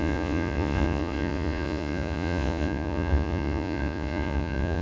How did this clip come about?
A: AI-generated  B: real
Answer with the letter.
A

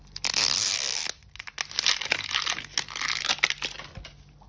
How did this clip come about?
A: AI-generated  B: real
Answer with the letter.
B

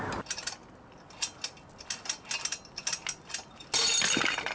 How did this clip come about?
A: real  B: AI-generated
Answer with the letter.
A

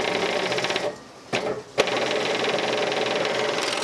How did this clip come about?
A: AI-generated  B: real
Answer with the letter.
B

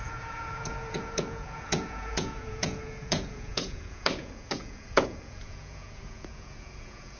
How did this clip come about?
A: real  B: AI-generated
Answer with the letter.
B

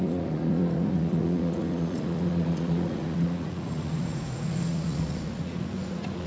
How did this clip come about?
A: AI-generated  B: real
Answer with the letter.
A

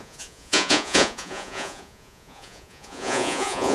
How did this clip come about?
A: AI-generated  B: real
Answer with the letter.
A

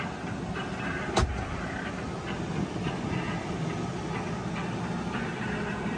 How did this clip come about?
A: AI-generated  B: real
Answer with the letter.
B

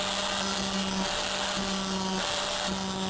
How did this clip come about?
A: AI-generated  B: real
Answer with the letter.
B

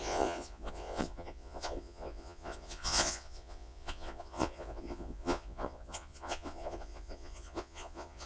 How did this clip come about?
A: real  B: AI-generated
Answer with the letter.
B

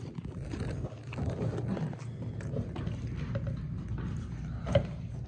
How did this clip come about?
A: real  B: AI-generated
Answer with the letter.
A